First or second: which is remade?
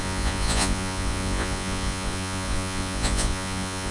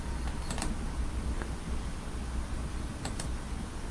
first